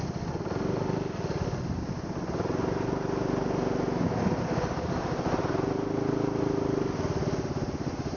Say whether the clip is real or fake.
real